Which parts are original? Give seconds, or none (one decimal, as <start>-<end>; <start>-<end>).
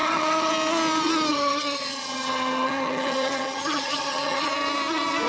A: 0.5-1.3; 4.5-5.3